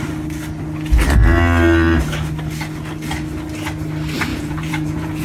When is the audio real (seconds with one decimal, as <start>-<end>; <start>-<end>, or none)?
0.0-4.3